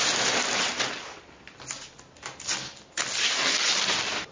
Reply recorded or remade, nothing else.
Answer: recorded